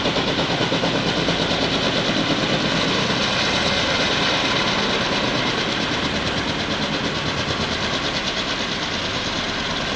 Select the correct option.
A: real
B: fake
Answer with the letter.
A